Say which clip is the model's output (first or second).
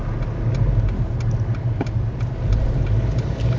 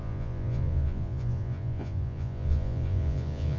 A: second